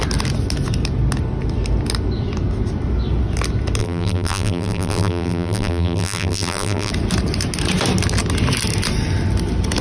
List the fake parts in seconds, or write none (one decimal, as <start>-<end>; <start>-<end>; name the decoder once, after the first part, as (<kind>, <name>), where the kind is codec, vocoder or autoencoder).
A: 3.8-6.9 (vocoder, BigVGAN v2)